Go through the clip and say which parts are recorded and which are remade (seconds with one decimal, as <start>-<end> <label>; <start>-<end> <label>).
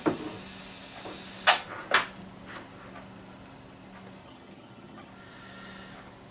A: 0.0-4.2 recorded; 4.2-5.1 remade; 5.1-6.3 recorded